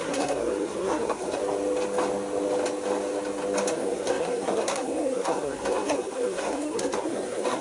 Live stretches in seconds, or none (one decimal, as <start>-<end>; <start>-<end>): 1.4-3.7